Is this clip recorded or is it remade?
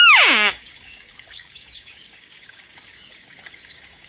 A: remade